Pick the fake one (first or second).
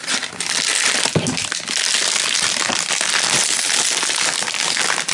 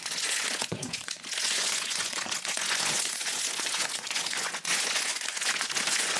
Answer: second